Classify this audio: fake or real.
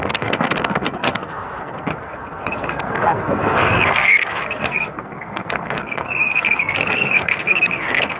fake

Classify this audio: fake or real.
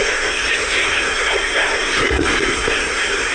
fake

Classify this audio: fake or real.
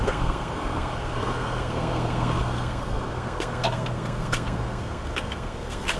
fake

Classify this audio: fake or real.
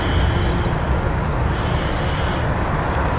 real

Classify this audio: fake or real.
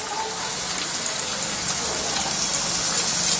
real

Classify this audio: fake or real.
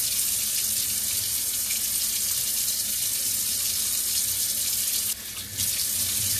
real